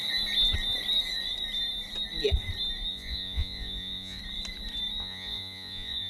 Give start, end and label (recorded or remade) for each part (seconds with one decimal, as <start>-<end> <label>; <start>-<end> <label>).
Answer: 0.0-2.9 recorded; 2.9-4.2 remade; 4.2-5.0 recorded; 5.0-6.1 remade